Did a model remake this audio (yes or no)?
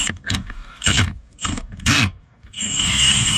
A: yes